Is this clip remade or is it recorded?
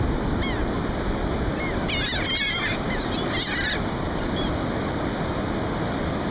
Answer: recorded